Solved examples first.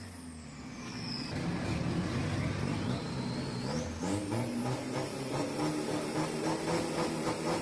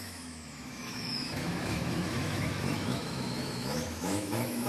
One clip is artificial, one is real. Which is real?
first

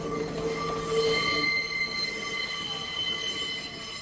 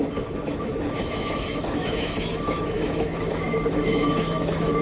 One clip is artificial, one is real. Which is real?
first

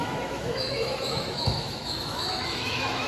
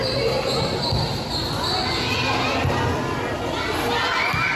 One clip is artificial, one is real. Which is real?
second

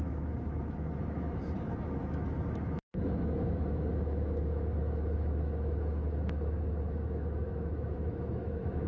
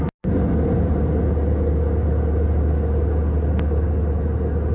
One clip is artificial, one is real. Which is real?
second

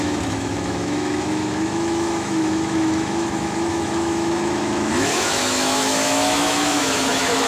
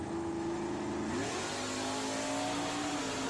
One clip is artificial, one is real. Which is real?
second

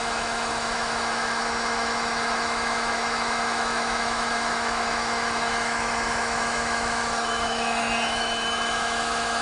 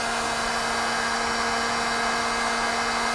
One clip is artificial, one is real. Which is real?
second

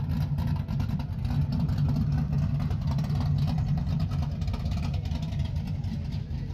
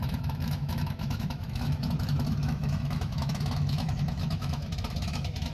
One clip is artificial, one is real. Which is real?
first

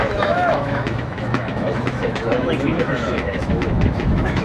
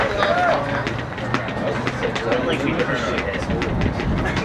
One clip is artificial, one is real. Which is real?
second